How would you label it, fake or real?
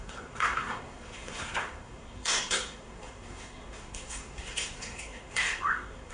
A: fake